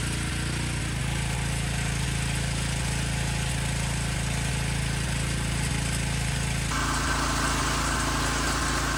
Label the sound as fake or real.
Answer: real